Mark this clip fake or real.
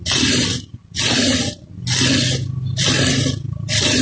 real